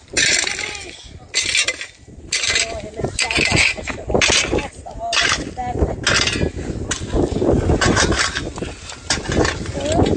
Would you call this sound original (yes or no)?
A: yes